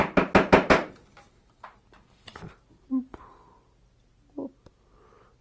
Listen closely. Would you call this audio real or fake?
real